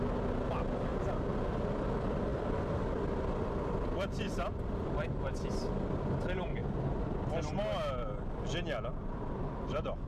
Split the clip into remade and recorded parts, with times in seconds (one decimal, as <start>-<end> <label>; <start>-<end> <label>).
0.0-0.9 recorded; 0.9-1.5 remade; 1.5-2.3 recorded; 2.3-5.5 remade; 5.5-8.9 recorded; 8.9-10.1 remade